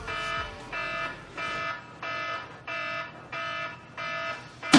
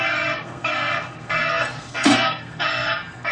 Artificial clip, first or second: second